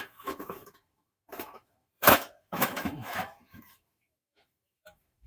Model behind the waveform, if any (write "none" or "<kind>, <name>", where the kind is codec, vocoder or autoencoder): autoencoder, DAC-VAE